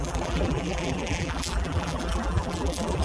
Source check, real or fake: fake